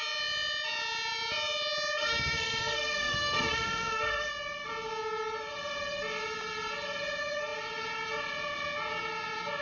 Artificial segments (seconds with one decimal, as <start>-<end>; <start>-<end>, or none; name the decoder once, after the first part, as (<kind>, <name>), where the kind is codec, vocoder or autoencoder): 2.0-4.3 (codec, SNAC)